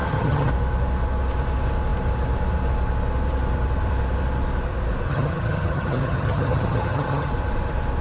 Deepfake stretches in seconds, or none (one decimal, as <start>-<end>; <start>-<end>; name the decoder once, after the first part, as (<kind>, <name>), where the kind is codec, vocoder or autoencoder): 0.0-0.5 (vocoder, HiFi-GAN); 5.1-7.3